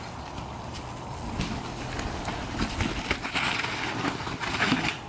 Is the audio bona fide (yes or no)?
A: yes